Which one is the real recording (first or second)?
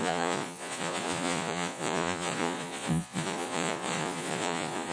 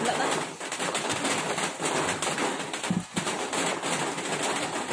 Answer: second